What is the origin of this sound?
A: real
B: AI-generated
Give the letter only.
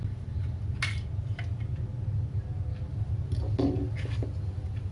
A